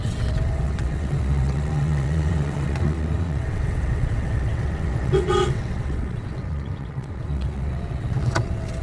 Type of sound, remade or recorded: remade